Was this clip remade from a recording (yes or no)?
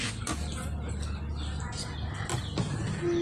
no